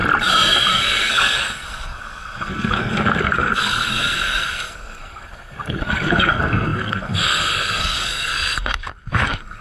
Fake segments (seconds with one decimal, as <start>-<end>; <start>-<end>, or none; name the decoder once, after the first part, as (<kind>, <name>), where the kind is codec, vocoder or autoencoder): 0.7-9.6 (codec, SNAC)